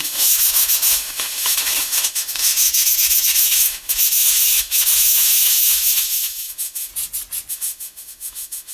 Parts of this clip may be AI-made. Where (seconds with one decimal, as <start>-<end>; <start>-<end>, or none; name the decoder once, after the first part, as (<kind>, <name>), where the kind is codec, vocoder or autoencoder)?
0.0-6.9 (autoencoder, DAC-VAE); 7.5-8.7